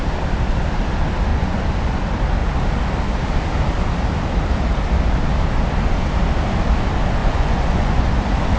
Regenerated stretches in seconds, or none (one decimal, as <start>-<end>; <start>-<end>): 1.3-2.0; 7.2-8.1